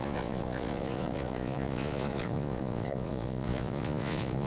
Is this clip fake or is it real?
fake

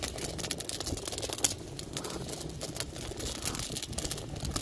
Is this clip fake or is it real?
real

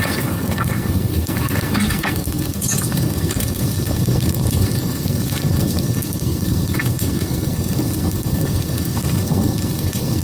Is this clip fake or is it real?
fake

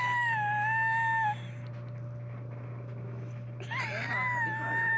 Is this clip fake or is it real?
real